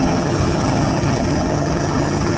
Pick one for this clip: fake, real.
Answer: fake